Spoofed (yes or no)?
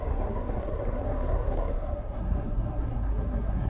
yes